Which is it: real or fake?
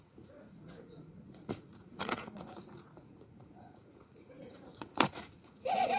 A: fake